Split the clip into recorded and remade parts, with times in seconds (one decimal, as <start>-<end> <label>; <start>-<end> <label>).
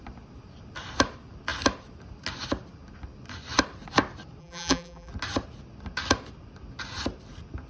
0.0-4.4 recorded; 4.4-5.1 remade; 5.1-7.7 recorded